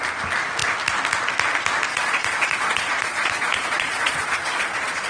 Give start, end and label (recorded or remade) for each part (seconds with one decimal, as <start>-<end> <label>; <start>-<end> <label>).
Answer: 0.0-1.9 recorded; 1.9-5.1 remade